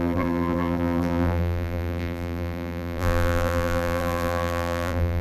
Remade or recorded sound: remade